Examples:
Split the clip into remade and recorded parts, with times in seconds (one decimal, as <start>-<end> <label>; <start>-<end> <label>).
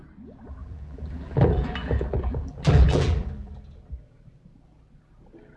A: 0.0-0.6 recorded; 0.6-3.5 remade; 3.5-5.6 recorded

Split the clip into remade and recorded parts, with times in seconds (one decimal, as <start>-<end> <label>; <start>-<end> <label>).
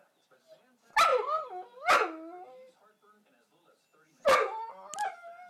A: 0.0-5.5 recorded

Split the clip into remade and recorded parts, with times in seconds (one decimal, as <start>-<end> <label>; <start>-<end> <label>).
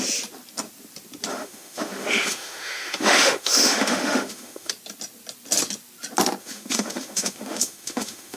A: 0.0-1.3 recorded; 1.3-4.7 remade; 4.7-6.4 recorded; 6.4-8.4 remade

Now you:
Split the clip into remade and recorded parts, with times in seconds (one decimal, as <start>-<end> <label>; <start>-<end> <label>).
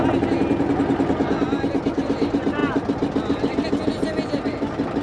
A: 0.0-5.0 recorded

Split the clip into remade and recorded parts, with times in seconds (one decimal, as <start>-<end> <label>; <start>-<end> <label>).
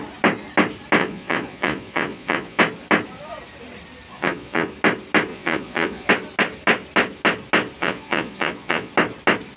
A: 0.0-1.0 recorded; 1.0-2.6 remade; 2.6-4.1 recorded; 4.1-4.7 remade; 4.7-5.3 recorded; 5.3-6.1 remade; 6.1-7.8 recorded; 7.8-8.9 remade; 8.9-9.6 recorded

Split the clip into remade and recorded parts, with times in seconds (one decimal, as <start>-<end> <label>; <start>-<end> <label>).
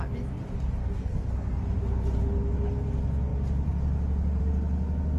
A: 0.0-0.8 recorded; 0.8-1.6 remade; 1.6-5.2 recorded